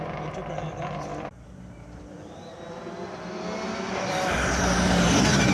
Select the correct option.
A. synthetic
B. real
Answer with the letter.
B